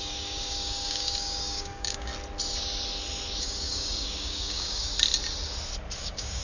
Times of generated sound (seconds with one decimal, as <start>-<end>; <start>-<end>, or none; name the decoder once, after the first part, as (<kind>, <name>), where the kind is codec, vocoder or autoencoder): 0.0-2.1 (codec, DAC); 3.4-4.9; 6.0-6.4